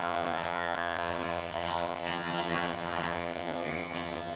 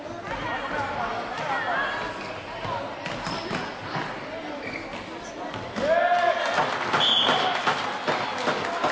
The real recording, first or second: second